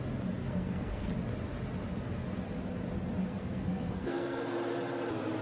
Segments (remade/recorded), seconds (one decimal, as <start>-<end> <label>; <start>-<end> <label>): 0.0-0.4 recorded; 0.4-1.1 remade; 1.1-3.2 recorded; 3.2-4.4 remade; 4.4-5.4 recorded